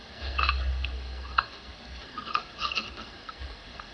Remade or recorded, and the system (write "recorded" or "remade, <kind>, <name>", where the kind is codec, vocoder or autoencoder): remade, codec, SNAC